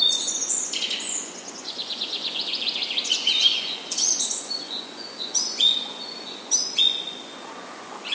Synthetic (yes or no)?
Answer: yes